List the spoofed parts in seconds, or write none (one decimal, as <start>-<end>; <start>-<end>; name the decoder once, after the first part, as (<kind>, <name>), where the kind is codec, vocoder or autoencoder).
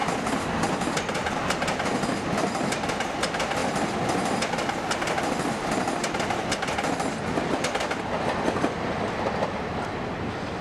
none